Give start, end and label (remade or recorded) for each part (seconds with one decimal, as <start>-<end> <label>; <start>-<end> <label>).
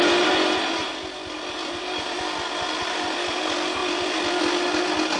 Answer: 0.0-1.6 recorded; 1.6-2.2 remade; 2.2-2.8 recorded; 2.8-3.4 remade; 3.4-3.8 recorded; 3.8-4.4 remade; 4.4-5.2 recorded